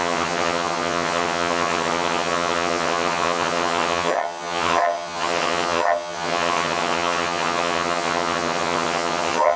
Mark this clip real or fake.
fake